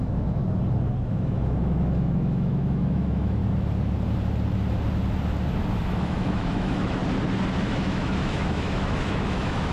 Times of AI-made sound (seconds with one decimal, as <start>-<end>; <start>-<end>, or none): 0.0-0.4; 1.1-3.4; 5.8-7.0; 7.6-9.7